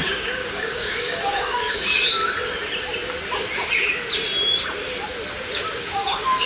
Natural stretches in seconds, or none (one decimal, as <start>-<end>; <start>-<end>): 1.9-5.8